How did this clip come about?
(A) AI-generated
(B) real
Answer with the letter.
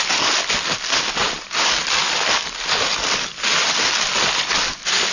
B